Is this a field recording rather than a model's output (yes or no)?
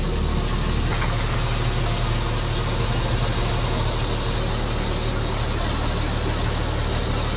yes